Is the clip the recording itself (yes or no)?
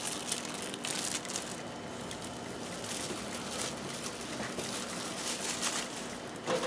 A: yes